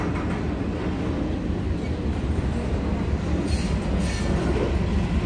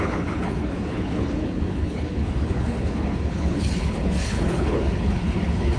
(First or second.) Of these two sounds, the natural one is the first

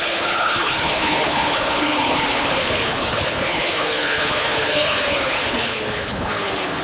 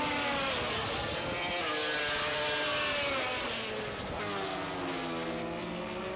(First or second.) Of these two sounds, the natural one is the second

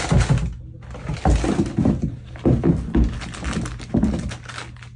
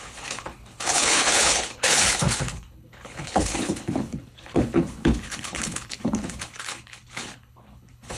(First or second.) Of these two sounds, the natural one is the first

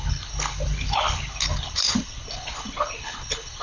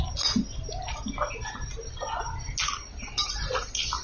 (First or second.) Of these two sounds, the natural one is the second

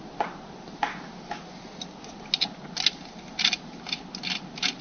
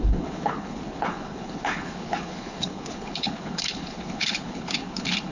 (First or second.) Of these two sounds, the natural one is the first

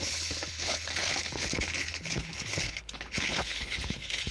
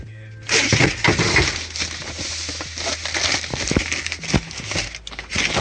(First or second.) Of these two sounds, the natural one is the second